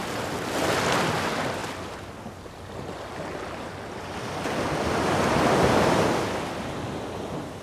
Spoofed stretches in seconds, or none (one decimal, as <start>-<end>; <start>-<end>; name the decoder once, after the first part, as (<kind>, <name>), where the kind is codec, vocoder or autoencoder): none